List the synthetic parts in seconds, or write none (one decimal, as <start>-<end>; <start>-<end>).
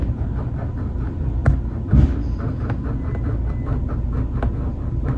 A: none